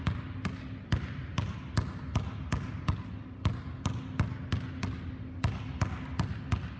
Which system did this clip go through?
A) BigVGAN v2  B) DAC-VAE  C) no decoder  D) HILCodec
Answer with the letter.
C